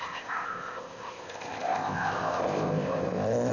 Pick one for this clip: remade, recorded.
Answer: remade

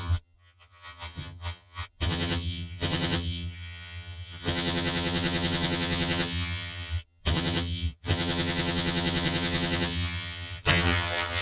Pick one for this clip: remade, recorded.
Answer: remade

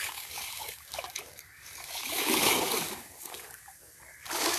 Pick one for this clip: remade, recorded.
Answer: remade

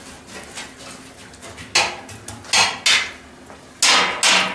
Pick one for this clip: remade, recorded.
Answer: recorded